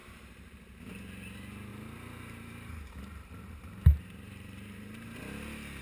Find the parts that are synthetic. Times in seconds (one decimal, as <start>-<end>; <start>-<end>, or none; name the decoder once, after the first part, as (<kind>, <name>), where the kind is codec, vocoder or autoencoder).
0.0-0.8 (vocoder, BigVGAN v2); 1.7-5.2